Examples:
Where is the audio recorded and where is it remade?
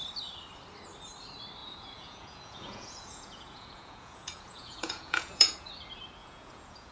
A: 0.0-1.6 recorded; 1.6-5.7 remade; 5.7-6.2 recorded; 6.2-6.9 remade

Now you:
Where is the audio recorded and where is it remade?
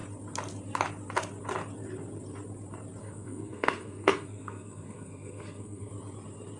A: 0.0-3.0 recorded; 3.0-5.9 remade; 5.9-6.6 recorded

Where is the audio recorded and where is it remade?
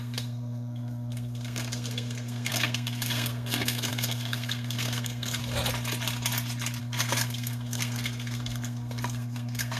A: 0.0-5.4 remade; 5.4-6.8 recorded; 6.8-9.8 remade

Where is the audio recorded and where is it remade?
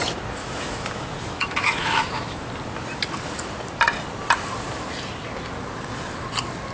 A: 0.0-0.4 recorded; 0.4-2.5 remade; 2.5-6.7 recorded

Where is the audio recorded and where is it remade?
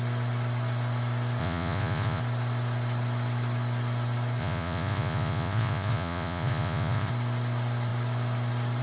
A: 0.0-1.4 recorded; 1.4-2.2 remade; 2.2-4.4 recorded; 4.4-7.1 remade; 7.1-8.8 recorded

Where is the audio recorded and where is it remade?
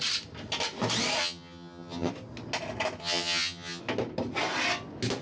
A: 0.0-1.2 recorded; 1.2-2.1 remade; 2.1-3.0 recorded; 3.0-3.8 remade; 3.8-5.2 recorded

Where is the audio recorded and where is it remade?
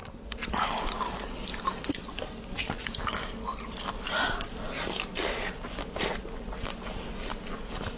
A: 0.0-1.8 remade; 1.8-3.5 recorded; 3.5-6.2 remade; 6.2-8.0 recorded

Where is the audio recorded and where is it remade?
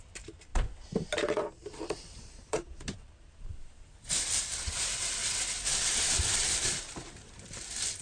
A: 0.0-5.2 remade; 5.2-5.8 recorded; 5.8-8.0 remade